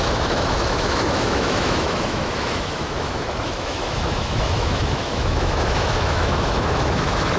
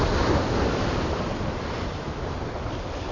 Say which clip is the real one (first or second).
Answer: second